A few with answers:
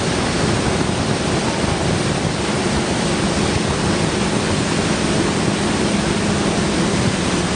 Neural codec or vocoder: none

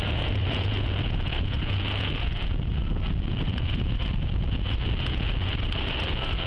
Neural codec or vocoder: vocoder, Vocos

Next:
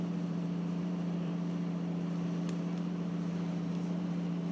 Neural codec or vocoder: vocoder, BigVGAN v2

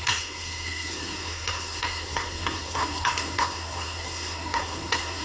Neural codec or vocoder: codec, SNAC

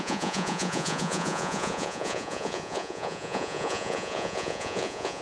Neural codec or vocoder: vocoder, Vocos